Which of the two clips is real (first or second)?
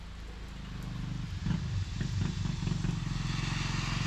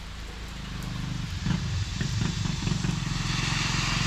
first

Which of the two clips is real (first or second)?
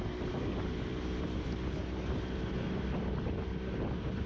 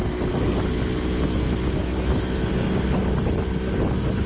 second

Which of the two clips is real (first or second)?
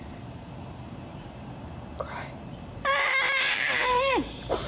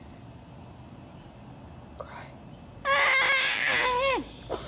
second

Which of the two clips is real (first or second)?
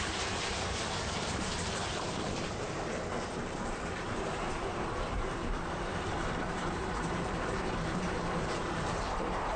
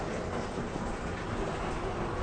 second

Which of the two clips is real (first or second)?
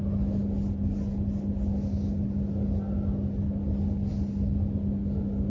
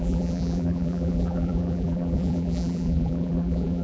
first